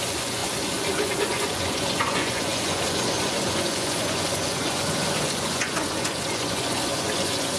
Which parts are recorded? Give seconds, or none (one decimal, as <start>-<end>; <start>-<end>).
none

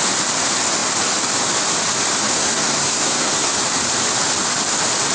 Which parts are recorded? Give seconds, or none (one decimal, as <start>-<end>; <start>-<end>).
0.0-2.3; 3.5-5.1

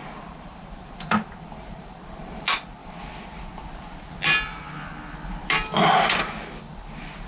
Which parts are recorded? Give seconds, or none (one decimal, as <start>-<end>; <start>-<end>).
2.1-7.3

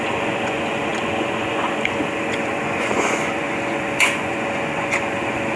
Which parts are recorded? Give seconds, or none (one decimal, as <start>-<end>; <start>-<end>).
none

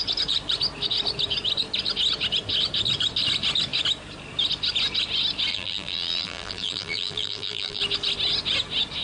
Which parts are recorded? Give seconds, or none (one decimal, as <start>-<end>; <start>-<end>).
0.0-5.5; 7.8-9.0

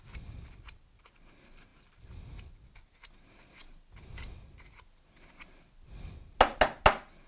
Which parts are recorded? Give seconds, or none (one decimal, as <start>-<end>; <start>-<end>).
0.0-7.3

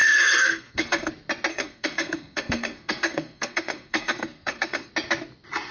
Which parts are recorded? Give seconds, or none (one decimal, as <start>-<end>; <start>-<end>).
1.1-1.5; 4.9-5.7